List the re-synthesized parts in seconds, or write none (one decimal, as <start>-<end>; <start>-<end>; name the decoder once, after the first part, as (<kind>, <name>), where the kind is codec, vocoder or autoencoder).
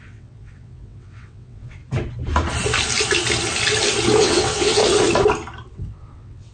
0.0-1.8 (vocoder, WaveNeXt); 4.2-4.8; 5.7-6.5